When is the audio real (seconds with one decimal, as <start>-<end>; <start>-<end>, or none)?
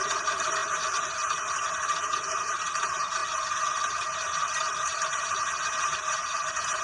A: 0.6-1.7